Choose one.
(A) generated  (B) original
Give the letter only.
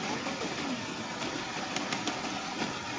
B